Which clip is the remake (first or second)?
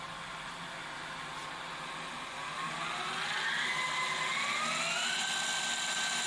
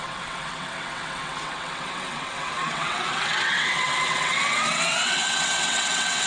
second